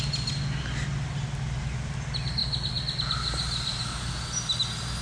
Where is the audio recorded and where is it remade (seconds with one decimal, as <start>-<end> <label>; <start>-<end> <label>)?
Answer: 0.0-5.0 recorded